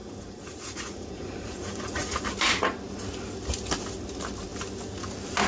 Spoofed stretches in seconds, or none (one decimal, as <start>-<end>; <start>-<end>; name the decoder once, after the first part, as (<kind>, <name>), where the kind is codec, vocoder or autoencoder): 0.0-2.2 (vocoder, Vocos)